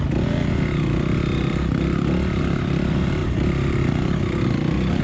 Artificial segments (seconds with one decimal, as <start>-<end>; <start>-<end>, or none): none